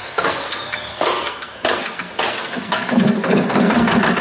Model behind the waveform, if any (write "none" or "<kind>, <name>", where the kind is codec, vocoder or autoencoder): codec, SNAC